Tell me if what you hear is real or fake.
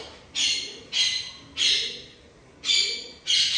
real